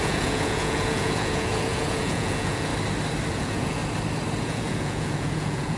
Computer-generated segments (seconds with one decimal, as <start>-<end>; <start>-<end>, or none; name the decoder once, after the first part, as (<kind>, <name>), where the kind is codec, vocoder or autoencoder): 0.0-2.7 (vocoder, Vocos); 3.3-3.8; 4.4-5.8